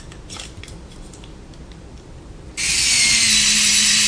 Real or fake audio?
real